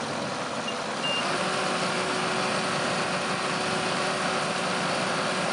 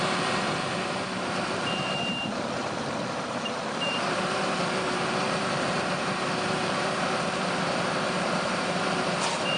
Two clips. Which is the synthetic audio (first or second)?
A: second